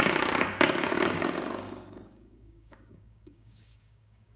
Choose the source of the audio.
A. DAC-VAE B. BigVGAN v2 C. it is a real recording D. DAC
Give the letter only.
D